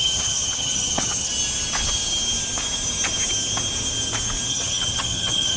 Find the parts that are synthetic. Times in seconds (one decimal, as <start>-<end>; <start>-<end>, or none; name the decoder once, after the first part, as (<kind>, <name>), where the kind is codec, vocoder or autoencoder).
0.0-1.3 (vocoder, HiFi-GAN); 4.5-5.6